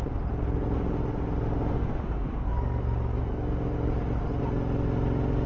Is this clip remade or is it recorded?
recorded